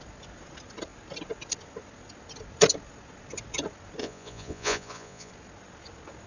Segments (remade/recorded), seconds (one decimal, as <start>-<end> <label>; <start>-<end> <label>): 0.0-4.0 recorded; 4.0-5.3 remade; 5.3-6.3 recorded